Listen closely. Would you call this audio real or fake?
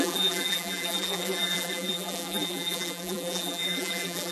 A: fake